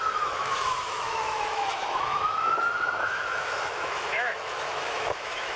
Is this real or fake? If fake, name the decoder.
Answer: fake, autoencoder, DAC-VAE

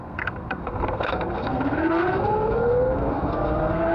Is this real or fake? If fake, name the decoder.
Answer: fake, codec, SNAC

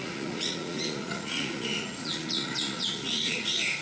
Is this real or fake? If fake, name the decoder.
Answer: fake, vocoder, Vocos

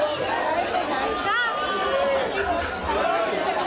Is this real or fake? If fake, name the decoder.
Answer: real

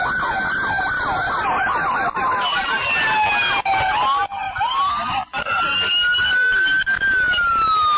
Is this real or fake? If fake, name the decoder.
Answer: real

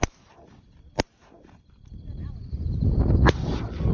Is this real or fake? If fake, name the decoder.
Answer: fake, vocoder, BigVGAN v2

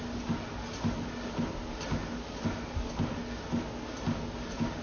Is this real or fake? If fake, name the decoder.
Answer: real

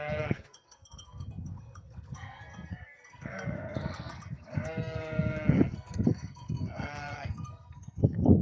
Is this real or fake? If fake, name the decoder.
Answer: fake, codec, SNAC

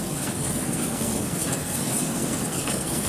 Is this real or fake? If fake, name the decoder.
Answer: fake, codec, SNAC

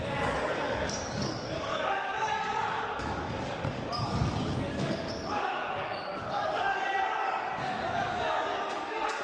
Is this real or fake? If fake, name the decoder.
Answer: fake, codec, DAC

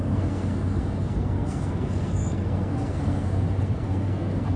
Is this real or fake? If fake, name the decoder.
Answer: fake, codec, SNAC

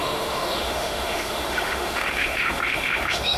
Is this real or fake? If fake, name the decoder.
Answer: fake, autoencoder, DAC-VAE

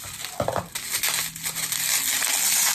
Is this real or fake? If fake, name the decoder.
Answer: real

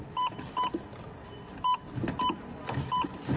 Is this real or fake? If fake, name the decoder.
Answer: real